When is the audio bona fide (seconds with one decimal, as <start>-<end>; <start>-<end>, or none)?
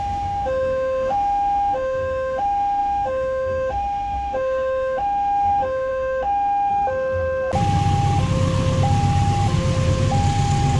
6.7-10.8